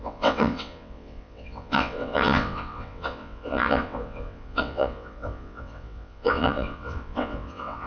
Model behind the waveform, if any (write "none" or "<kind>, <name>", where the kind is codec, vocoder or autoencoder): vocoder, WaveNeXt